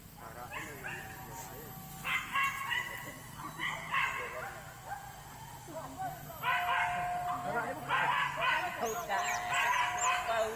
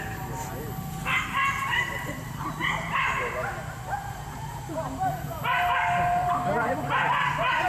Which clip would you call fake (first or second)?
second